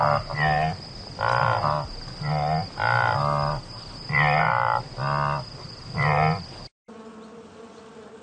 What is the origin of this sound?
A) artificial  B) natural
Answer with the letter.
B